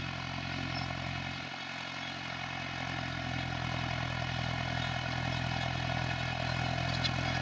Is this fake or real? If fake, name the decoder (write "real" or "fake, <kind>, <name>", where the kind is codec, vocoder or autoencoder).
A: real